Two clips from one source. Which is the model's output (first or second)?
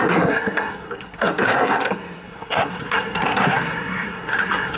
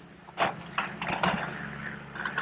first